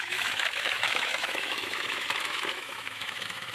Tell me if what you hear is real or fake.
fake